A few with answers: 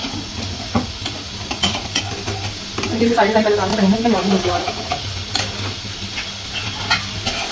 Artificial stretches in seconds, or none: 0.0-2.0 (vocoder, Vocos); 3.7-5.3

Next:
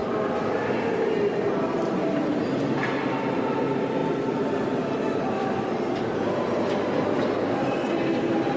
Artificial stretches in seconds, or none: none

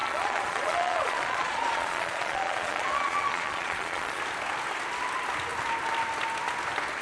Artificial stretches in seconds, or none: 0.0-4.2 (vocoder, Vocos)

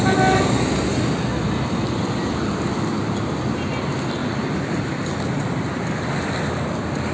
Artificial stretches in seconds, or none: none

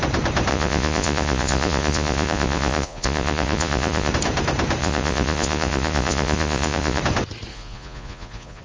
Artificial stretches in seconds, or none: 0.5-4.1 (vocoder, Vocos); 4.8-7.0; 7.5-8.6

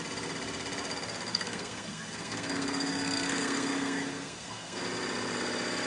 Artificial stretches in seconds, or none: 1.3-4.8 (codec, SNAC)